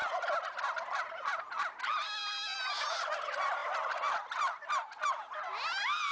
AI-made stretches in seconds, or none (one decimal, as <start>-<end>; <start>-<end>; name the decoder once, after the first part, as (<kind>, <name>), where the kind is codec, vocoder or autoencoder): none